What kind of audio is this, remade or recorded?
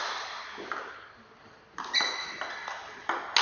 recorded